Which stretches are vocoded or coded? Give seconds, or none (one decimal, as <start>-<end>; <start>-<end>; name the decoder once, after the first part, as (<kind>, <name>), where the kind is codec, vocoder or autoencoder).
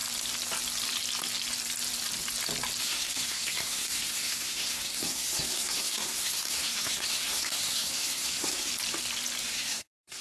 2.8-8.7 (codec, SNAC); 9.4-10.2